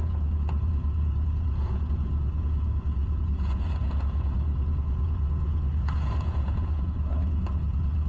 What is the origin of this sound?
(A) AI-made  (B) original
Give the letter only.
A